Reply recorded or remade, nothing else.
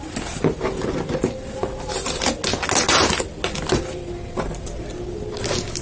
recorded